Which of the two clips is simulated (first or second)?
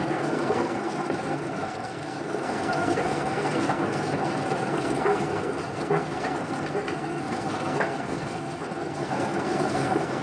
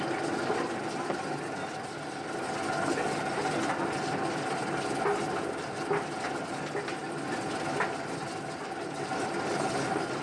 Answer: first